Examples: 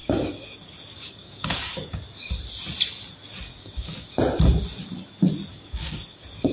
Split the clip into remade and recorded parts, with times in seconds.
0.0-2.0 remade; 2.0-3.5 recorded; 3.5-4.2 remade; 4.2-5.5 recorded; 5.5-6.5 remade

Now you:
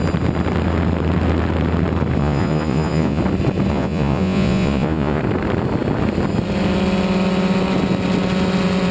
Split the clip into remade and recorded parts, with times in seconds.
0.0-2.2 recorded; 2.2-3.2 remade; 3.2-3.7 recorded; 3.7-5.2 remade; 5.2-8.9 recorded

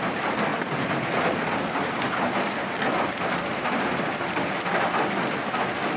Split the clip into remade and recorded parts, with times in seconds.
0.0-0.5 recorded; 0.5-4.1 remade; 4.1-6.0 recorded

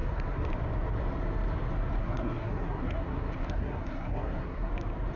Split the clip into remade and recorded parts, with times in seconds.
0.0-0.5 remade; 0.5-2.0 recorded; 2.0-4.7 remade; 4.7-5.2 recorded

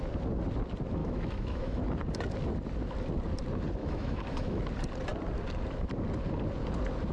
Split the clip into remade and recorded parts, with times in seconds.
0.0-1.0 recorded; 1.0-1.8 remade; 1.8-3.8 recorded; 3.8-4.6 remade; 4.6-7.1 recorded